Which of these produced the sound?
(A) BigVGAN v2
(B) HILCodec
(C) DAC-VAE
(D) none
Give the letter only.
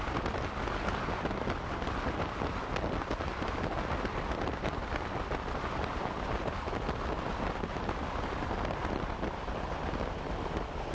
D